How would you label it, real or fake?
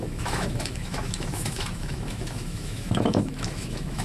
fake